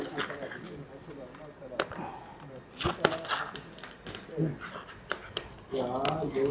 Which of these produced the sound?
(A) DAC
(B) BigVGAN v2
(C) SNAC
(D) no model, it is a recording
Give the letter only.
D